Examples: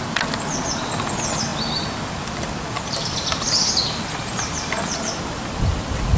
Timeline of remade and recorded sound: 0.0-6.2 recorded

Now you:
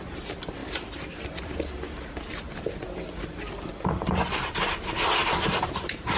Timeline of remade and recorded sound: 0.0-0.6 recorded; 0.6-2.3 remade; 2.3-5.2 recorded; 5.2-6.2 remade

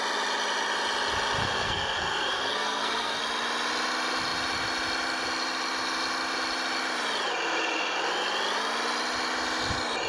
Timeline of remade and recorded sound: 0.0-1.4 recorded; 1.4-3.2 remade; 3.2-10.1 recorded

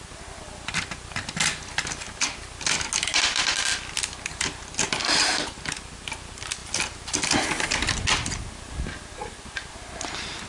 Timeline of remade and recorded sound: 0.0-10.5 recorded

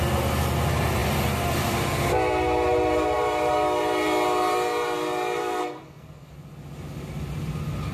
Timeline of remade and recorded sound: 0.0-5.4 recorded; 5.4-6.3 remade; 6.3-7.9 recorded

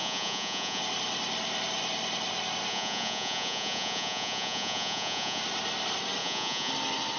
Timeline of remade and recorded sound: 0.0-0.8 remade; 0.8-2.7 recorded; 2.7-5.4 remade; 5.4-6.2 recorded; 6.2-6.7 remade; 6.7-7.2 recorded